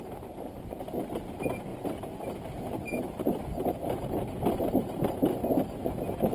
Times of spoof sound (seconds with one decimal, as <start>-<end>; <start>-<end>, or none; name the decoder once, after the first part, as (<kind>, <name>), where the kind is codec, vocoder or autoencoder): 1.7-5.0 (vocoder, BigVGAN v2); 5.4-6.3